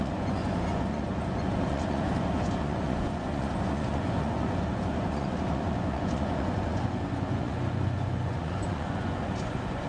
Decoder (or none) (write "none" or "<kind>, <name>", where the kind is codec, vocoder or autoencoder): vocoder, Vocos